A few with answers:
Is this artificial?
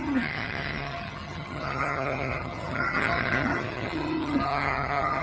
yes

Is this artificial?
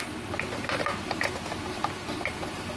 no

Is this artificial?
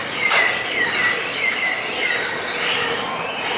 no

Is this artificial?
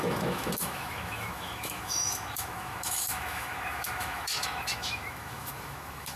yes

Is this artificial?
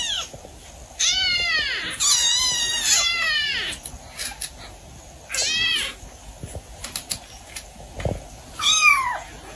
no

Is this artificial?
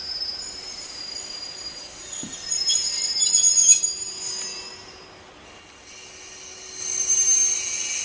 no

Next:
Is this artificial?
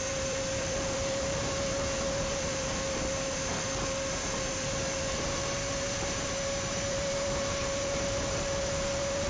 yes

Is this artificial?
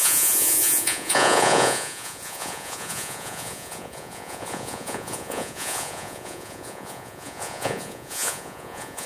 yes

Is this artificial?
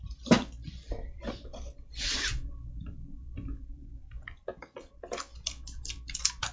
yes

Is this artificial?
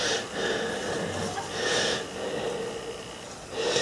no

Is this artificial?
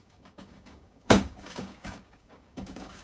yes